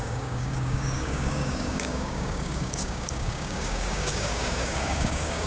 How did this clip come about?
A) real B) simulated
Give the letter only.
B